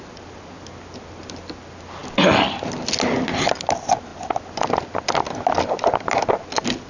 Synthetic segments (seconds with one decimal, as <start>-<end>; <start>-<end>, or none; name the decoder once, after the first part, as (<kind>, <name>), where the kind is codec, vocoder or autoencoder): none